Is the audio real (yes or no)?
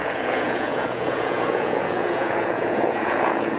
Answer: no